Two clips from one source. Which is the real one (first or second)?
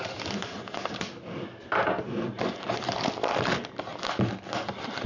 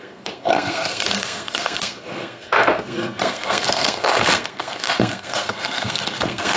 first